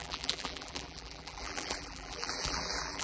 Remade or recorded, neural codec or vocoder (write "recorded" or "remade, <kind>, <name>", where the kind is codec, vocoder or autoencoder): remade, vocoder, BigVGAN v2